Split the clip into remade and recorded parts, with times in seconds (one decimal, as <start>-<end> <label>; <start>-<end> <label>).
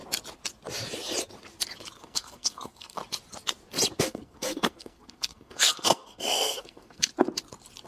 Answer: 0.0-2.0 recorded; 2.0-3.0 remade; 3.0-4.0 recorded; 4.0-7.1 remade; 7.1-7.9 recorded